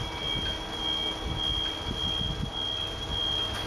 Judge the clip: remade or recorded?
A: recorded